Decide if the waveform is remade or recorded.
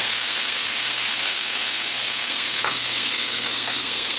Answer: remade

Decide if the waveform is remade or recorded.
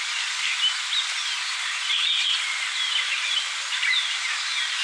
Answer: recorded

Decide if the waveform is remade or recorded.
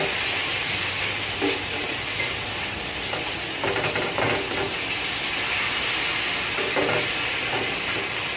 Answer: recorded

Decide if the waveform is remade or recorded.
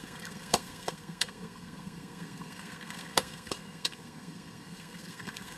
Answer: remade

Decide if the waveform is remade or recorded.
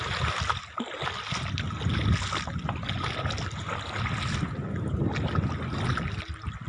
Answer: recorded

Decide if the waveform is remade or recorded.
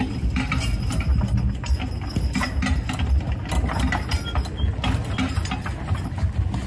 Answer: recorded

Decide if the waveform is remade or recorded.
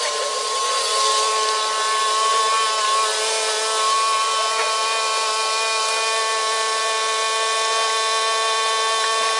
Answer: recorded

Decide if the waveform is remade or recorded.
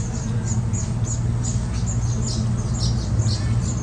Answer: recorded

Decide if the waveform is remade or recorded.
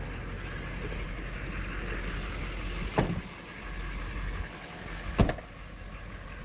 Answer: recorded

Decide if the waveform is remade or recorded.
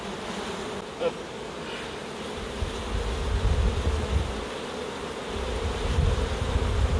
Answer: recorded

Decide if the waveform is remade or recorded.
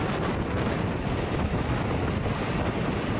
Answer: recorded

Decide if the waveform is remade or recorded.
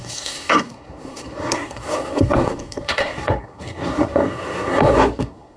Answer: remade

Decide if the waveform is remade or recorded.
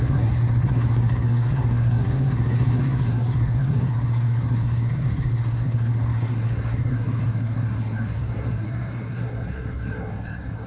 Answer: remade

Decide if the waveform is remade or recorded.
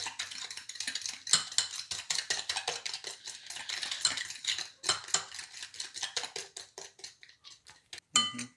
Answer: recorded